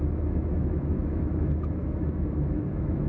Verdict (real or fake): fake